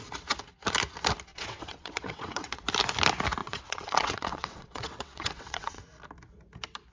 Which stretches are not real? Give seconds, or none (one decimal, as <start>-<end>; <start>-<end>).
1.3-2.6; 3.4-5.8